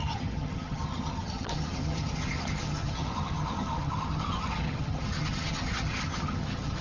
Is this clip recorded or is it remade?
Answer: remade